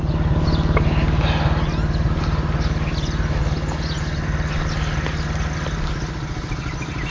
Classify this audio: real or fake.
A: real